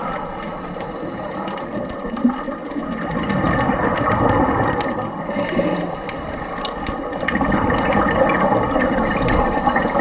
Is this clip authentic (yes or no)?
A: yes